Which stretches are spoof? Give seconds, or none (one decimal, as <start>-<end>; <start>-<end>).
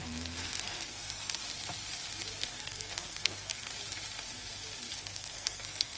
0.0-1.4; 2.5-3.7; 5.0-6.0